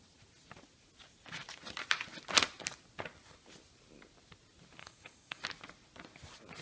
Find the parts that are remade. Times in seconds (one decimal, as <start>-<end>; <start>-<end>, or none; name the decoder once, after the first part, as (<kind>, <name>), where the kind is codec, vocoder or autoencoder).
4.8-5.4 (codec, DAC)